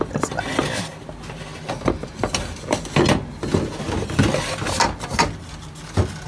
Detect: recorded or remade recorded